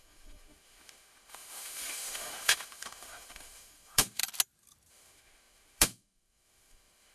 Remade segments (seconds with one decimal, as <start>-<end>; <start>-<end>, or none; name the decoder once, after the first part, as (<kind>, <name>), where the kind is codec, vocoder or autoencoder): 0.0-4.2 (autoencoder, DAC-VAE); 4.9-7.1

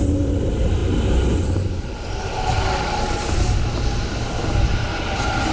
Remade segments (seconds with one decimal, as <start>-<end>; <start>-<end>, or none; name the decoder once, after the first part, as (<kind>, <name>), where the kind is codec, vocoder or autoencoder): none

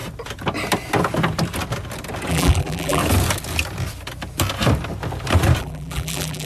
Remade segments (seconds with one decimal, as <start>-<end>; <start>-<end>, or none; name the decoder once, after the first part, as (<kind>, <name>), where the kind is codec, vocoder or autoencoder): 2.3-3.0 (vocoder, BigVGAN v2); 5.6-6.5

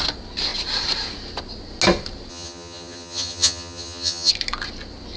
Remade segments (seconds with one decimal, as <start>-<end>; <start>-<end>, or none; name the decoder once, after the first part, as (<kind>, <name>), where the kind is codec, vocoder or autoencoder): 2.3-4.3 (vocoder, HiFi-GAN)